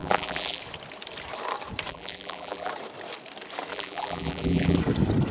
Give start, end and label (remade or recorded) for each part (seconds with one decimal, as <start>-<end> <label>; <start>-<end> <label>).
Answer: 0.0-0.6 remade; 0.6-1.9 recorded; 1.9-2.7 remade; 2.7-3.7 recorded; 3.7-4.8 remade; 4.8-5.3 recorded